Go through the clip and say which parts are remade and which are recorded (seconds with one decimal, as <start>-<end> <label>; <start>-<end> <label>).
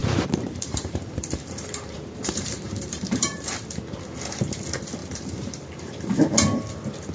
0.0-3.5 remade; 3.5-5.0 recorded; 5.0-5.9 remade; 5.9-7.1 recorded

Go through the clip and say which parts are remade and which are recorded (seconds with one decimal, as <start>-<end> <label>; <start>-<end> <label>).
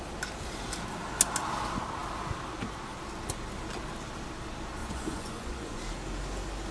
0.0-4.8 recorded; 4.8-5.8 remade; 5.8-6.7 recorded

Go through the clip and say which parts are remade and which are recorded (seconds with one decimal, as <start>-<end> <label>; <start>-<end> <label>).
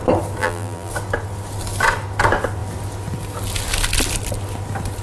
0.0-0.4 recorded; 0.4-0.9 remade; 0.9-5.0 recorded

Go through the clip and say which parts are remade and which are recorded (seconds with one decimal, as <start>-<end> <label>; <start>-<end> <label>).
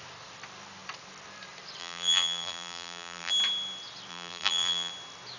0.0-1.8 recorded; 1.8-3.3 remade; 3.3-4.1 recorded; 4.1-4.9 remade; 4.9-5.4 recorded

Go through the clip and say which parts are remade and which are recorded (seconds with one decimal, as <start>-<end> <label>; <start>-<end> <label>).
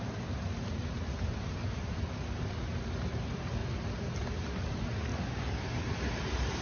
0.0-3.6 remade; 3.6-4.3 recorded; 4.3-5.1 remade; 5.1-6.1 recorded; 6.1-6.6 remade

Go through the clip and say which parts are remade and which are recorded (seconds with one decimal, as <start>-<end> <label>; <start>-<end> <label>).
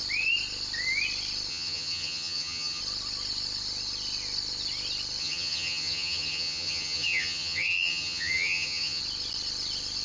0.0-1.5 recorded; 1.5-2.8 remade; 2.8-5.2 recorded; 5.2-9.0 remade; 9.0-10.0 recorded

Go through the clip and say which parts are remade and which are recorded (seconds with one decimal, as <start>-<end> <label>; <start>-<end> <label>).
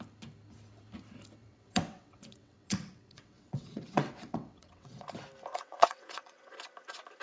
0.0-1.4 recorded; 1.4-5.1 remade; 5.1-5.5 recorded; 5.5-6.5 remade; 6.5-7.2 recorded